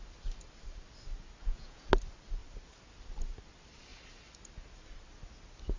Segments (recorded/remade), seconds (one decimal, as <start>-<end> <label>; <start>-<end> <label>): 0.0-1.4 recorded; 1.4-1.9 remade; 1.9-5.8 recorded